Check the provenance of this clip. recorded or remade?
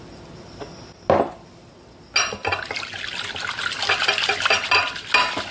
recorded